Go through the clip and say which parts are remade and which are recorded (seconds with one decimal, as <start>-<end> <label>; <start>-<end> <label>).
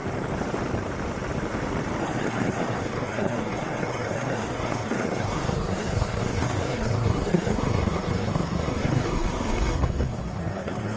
0.0-2.0 recorded; 2.0-11.0 remade